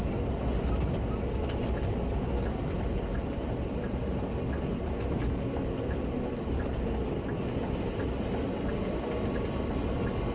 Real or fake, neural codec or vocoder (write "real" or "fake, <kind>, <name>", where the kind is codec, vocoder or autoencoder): real